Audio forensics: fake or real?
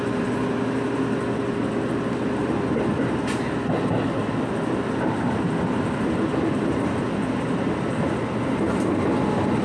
real